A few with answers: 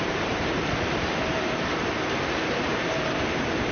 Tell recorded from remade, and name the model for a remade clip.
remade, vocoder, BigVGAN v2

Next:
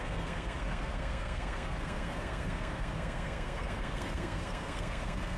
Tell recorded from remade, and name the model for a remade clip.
remade, codec, SNAC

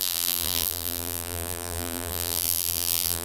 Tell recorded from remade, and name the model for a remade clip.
remade, vocoder, BigVGAN v2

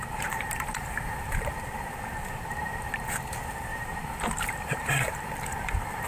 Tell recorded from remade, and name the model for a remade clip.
remade, vocoder, BigVGAN v2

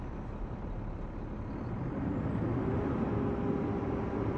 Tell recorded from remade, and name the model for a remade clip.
recorded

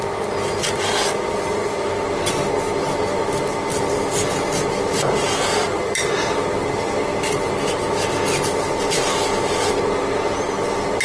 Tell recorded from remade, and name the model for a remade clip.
recorded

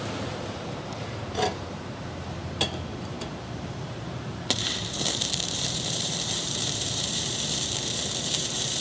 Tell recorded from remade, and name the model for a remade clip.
remade, vocoder, BigVGAN v2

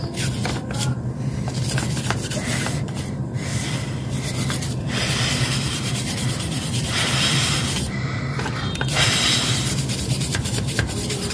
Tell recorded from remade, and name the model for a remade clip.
remade, vocoder, BigVGAN v2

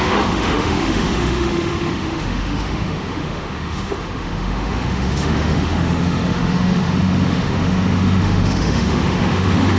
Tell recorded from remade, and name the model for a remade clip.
remade, autoencoder, DAC-VAE